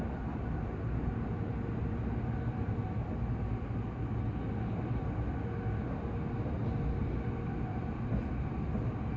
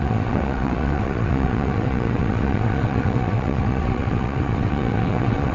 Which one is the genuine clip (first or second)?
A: first